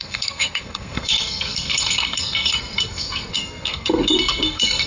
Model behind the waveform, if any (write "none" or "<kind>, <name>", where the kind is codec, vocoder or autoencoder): codec, SNAC